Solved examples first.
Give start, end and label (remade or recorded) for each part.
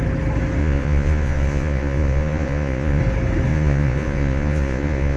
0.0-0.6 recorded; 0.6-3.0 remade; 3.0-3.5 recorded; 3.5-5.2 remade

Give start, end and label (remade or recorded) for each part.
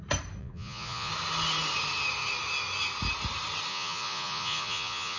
0.0-0.4 recorded; 0.4-1.1 remade; 1.1-3.7 recorded; 3.7-5.2 remade